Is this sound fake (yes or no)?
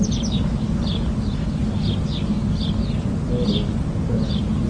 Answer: no